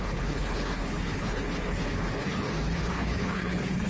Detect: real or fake fake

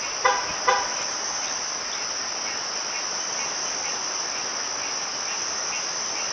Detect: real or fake real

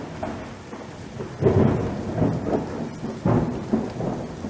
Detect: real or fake real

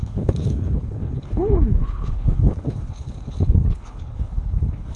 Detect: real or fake fake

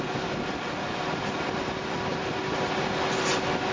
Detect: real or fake real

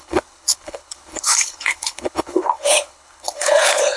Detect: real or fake fake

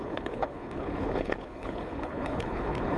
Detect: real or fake fake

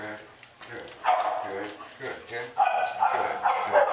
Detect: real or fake real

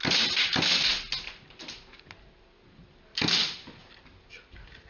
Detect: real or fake real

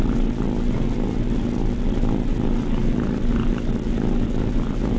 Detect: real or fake real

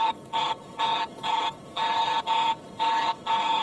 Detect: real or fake fake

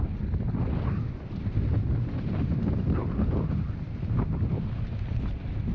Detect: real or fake real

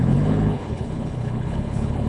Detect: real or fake fake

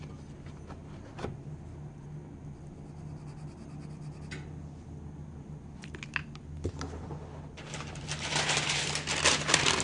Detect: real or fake real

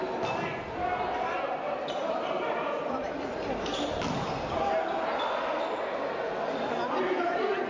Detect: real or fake real